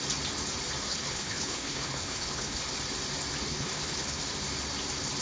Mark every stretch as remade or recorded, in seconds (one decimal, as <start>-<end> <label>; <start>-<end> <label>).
0.0-0.9 recorded; 0.9-2.6 remade; 2.6-3.5 recorded; 3.5-4.2 remade; 4.2-5.2 recorded